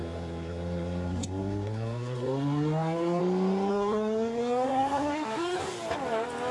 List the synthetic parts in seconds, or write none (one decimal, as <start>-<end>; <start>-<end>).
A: 0.0-3.2; 3.7-5.6